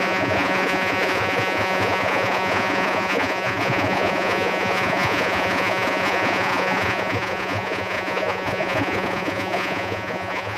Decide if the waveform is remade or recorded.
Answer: remade